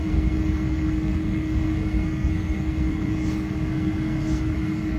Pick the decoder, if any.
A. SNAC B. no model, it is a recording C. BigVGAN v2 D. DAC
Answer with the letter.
A